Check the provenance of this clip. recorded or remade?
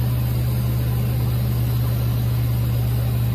recorded